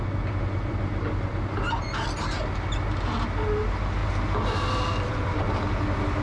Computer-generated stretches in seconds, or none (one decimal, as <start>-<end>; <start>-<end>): 4.0-5.5